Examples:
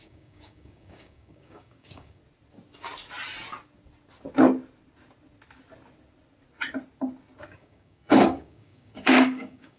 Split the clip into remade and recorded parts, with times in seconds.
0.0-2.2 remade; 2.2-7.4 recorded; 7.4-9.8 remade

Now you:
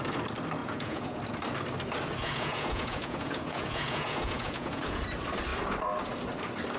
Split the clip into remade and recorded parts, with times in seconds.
0.0-0.6 recorded; 0.6-1.2 remade; 1.2-2.2 recorded; 2.2-5.0 remade; 5.0-6.8 recorded

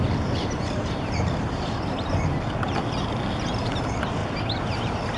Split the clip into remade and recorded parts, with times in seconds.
0.0-2.8 remade; 2.8-3.6 recorded; 3.6-4.2 remade; 4.2-5.2 recorded

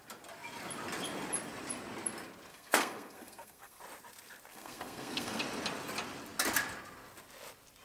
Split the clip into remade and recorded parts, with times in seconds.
0.0-2.5 recorded; 2.5-3.8 remade; 3.8-4.5 recorded; 4.5-5.4 remade; 5.4-7.8 recorded

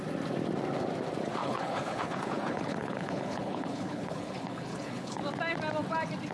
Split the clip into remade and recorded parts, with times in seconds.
0.0-1.4 recorded; 1.4-5.2 remade; 5.2-6.3 recorded

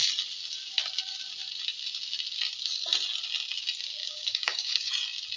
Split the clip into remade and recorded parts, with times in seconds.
0.0-4.0 recorded; 4.0-4.9 remade; 4.9-5.4 recorded